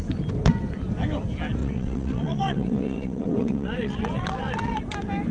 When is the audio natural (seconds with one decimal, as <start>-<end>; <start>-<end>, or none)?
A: 0.0-1.6; 4.8-5.3